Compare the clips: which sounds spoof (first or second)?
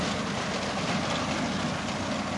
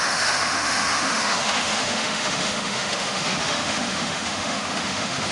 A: second